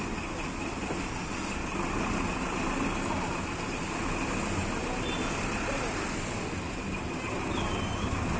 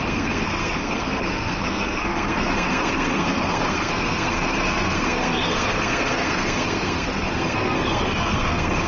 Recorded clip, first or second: first